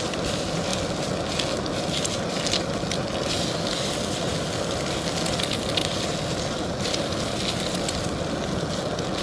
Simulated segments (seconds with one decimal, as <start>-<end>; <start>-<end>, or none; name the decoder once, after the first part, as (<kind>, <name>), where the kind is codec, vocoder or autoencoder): none